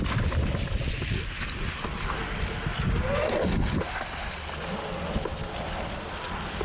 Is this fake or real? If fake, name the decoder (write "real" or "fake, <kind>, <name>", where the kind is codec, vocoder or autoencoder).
real